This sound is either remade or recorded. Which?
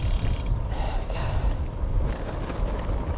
remade